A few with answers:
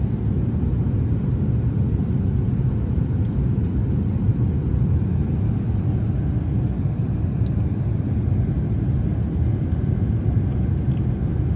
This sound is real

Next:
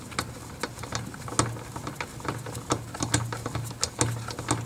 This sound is real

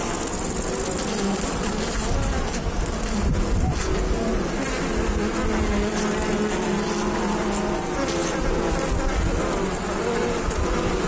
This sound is real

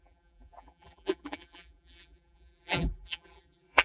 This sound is fake